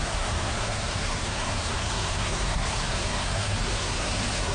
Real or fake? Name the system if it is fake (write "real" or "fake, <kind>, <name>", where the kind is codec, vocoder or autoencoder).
fake, codec, SNAC